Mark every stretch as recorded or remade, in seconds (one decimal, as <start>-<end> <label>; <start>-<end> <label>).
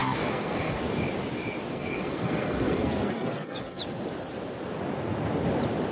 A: 0.0-0.8 remade; 0.8-1.7 recorded; 1.7-3.8 remade; 3.8-5.9 recorded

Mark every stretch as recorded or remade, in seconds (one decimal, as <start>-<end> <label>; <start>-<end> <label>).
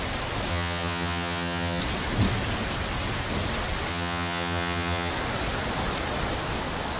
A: 0.0-0.5 recorded; 0.5-1.8 remade; 1.8-3.9 recorded; 3.9-5.1 remade; 5.1-7.0 recorded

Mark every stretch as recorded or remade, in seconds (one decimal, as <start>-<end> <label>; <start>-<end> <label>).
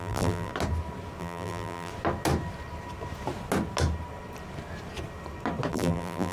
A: 0.0-0.5 remade; 0.5-1.2 recorded; 1.2-1.9 remade; 1.9-5.7 recorded; 5.7-6.3 remade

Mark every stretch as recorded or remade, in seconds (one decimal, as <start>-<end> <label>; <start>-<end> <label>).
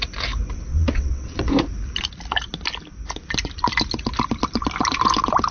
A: 0.0-0.7 recorded; 0.7-1.5 remade; 1.5-5.5 recorded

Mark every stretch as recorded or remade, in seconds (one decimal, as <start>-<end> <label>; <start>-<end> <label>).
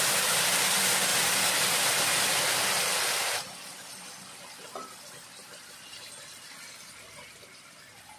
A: 0.0-1.1 remade; 1.1-3.5 recorded; 3.5-8.2 remade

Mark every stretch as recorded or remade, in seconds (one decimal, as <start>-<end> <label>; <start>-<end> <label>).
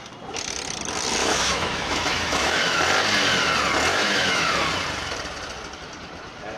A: 0.0-1.2 recorded; 1.2-2.8 remade; 2.8-3.9 recorded; 3.9-4.5 remade; 4.5-6.6 recorded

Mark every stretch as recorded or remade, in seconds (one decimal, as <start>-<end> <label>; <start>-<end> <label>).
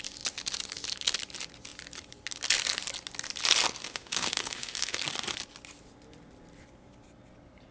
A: 0.0-3.8 recorded; 3.8-5.0 remade; 5.0-7.7 recorded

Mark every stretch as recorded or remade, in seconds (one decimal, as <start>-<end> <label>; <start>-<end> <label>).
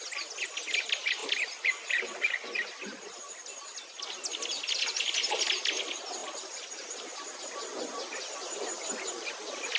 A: 0.0-9.8 recorded